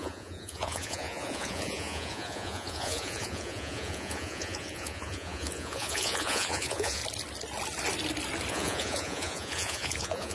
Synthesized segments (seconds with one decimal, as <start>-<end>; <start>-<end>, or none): 0.0-7.0; 8.5-10.3